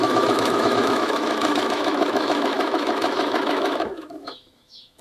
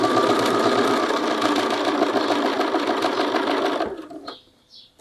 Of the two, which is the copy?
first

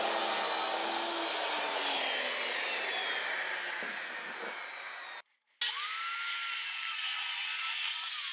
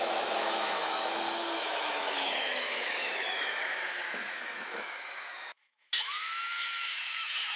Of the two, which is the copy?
second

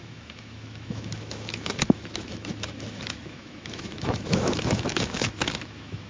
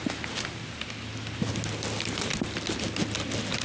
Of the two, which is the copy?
first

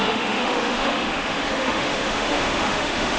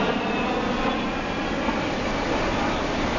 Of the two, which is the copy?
first